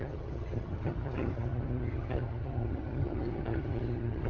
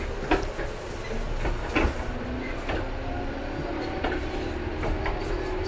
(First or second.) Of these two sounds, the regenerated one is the first